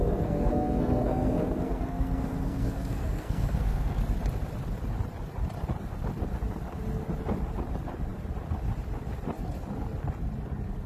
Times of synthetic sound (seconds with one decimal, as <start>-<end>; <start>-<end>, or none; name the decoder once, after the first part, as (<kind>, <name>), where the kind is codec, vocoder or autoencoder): 0.0-4.0 (codec, SNAC)

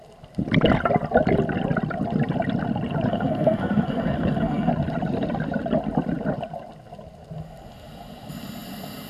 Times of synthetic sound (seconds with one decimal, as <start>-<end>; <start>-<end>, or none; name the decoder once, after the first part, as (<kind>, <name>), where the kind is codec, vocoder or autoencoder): 3.1-4.7 (codec, SNAC)

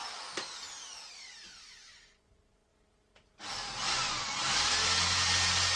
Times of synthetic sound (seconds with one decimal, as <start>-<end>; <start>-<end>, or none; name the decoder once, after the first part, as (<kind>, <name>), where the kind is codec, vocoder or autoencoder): 1.7-2.7 (vocoder, Vocos); 3.9-4.4